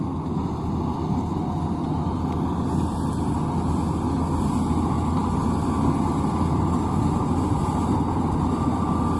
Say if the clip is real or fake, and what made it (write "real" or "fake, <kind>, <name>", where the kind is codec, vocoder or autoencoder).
real